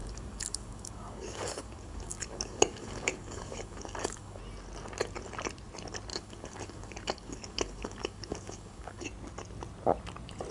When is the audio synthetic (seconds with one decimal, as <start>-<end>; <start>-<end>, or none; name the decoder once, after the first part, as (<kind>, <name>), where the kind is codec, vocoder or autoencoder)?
0.0-4.4 (codec, DAC); 6.1-9.0